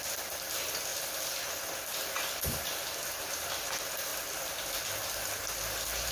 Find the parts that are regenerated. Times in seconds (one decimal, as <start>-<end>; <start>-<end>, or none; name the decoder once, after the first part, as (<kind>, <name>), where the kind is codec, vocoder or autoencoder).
none